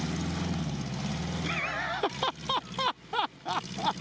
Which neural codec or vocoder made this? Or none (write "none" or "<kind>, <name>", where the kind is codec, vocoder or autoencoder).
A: none